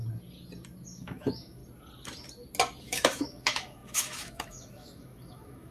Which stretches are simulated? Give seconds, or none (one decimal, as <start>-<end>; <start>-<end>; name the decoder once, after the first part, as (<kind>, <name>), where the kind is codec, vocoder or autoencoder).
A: 1.0-1.6 (autoencoder, DAC-VAE); 2.8-5.7

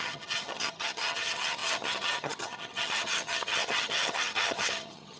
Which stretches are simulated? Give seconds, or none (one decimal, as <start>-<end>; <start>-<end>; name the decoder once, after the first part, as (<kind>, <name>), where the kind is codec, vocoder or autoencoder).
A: 0.0-5.2 (vocoder, HiFi-GAN)

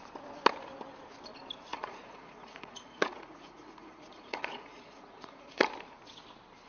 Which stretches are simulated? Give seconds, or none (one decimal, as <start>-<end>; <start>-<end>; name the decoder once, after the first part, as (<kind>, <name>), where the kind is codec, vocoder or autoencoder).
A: 1.7-5.7 (vocoder, Vocos)

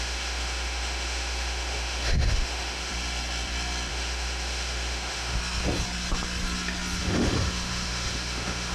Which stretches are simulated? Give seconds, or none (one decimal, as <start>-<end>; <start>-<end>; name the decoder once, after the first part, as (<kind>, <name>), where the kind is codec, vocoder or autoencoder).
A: 0.0-2.9 (autoencoder, DAC-VAE); 3.9-5.4; 7.0-8.7

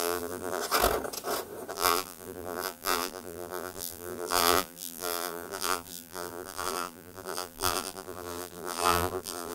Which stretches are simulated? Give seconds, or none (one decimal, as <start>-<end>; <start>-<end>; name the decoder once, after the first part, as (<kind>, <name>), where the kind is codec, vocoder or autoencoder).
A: 0.0-0.6 (vocoder, BigVGAN v2); 1.7-9.5

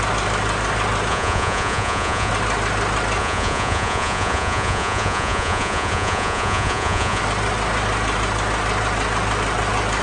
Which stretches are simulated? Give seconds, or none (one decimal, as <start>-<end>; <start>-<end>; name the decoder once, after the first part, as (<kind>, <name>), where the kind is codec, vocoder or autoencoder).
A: 1.1-2.3 (vocoder, Vocos); 3.2-7.2